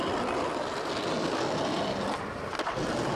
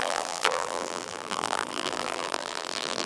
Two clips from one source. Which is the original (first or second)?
first